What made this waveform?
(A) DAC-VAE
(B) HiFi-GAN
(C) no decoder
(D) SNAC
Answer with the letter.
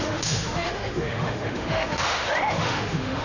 A